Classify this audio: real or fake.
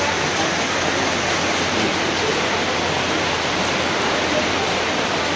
real